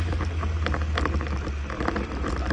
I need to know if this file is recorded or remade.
recorded